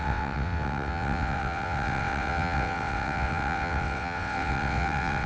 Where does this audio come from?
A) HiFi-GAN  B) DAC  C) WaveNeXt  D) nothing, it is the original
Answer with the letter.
C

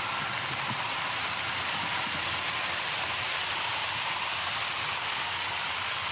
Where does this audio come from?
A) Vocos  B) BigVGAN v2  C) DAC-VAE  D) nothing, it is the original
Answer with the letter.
D